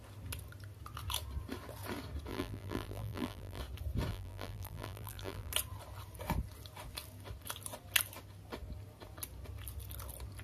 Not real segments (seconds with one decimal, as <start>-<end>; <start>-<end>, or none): 2.3-3.6; 4.1-5.5